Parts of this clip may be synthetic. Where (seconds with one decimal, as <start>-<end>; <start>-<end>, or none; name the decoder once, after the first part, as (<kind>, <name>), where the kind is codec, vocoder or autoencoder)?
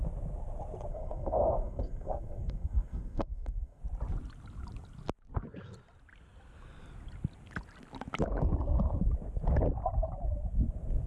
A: 0.9-3.8 (codec, SNAC)